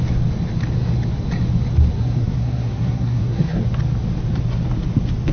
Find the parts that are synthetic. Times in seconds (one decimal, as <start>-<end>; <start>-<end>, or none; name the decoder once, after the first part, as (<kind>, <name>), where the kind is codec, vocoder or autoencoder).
1.9-3.6 (codec, SNAC)